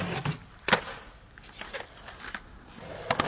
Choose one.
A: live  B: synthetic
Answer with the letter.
A